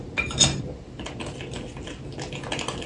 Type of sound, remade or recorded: recorded